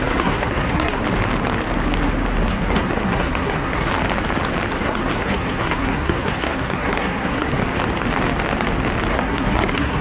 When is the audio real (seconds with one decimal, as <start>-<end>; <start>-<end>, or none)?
1.0-2.5; 3.9-4.7; 7.6-9.1